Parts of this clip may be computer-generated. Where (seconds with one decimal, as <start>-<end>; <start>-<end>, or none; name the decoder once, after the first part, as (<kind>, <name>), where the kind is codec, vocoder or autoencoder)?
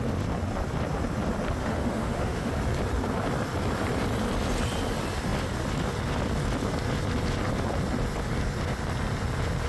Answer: 1.6-2.5 (autoencoder, DAC-VAE)